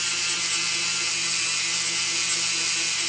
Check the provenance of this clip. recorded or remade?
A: recorded